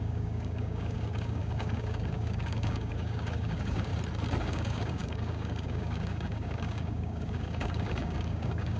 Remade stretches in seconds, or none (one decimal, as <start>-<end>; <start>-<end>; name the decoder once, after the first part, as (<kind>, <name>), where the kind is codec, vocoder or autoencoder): 0.0-3.9 (codec, DAC); 4.4-8.8